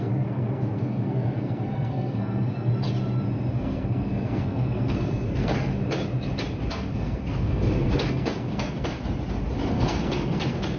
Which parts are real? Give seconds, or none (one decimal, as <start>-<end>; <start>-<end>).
2.7-3.5; 5.7-6.7; 9.0-9.7